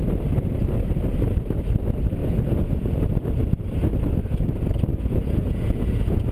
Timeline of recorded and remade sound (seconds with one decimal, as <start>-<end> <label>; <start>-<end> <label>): 0.0-2.2 recorded; 2.2-3.1 remade; 3.1-4.9 recorded; 4.9-6.3 remade